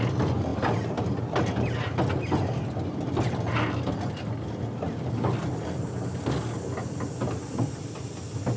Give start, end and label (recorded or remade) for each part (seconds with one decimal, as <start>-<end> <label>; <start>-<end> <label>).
0.0-8.6 recorded